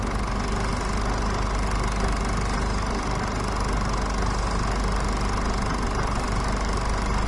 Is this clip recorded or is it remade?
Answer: recorded